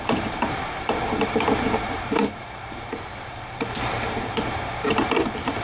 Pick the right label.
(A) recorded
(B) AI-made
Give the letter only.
B